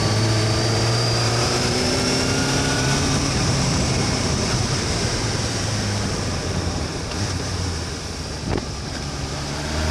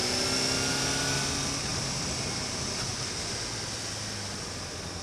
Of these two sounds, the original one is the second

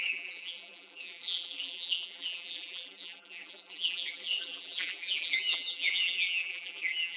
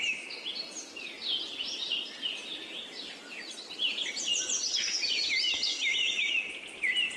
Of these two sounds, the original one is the second